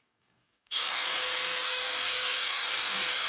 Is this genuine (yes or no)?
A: no